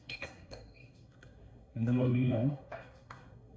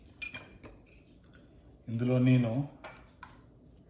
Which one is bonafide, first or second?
second